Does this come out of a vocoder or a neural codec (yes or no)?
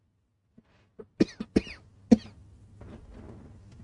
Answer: no